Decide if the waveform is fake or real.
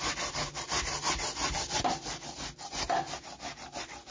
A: real